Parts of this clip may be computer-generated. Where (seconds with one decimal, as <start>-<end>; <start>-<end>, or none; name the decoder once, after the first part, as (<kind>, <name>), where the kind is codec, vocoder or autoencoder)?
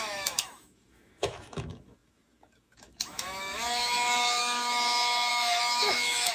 0.0-6.3 (autoencoder, DAC-VAE)